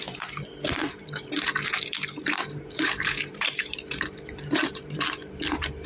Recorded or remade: remade